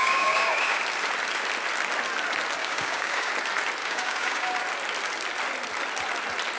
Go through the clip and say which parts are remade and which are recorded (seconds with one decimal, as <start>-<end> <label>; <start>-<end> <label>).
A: 0.0-0.8 remade; 0.8-2.6 recorded; 2.6-3.3 remade; 3.3-3.8 recorded; 3.8-4.6 remade; 4.6-6.6 recorded

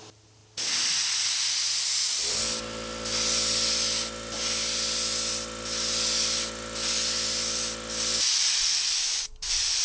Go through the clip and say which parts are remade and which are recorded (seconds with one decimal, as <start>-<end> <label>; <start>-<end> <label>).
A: 0.0-9.8 recorded

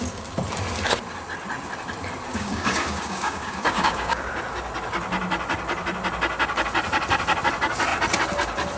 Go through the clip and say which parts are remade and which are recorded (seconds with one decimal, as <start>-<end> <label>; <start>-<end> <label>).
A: 0.0-2.3 recorded; 2.3-4.3 remade; 4.3-8.8 recorded

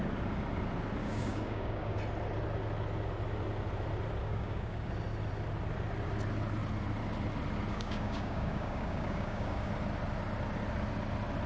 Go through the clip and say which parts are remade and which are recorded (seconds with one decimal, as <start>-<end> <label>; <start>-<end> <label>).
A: 0.0-1.0 recorded; 1.0-2.0 remade; 2.0-4.2 recorded; 4.2-4.9 remade; 4.9-7.7 recorded; 7.7-9.7 remade; 9.7-11.5 recorded

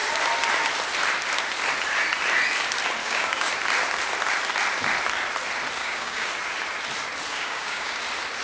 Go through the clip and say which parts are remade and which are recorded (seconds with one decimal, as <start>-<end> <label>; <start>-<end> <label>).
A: 0.0-3.0 recorded; 3.0-3.5 remade; 3.5-5.8 recorded; 5.8-6.3 remade; 6.3-7.3 recorded; 7.3-8.0 remade; 8.0-8.4 recorded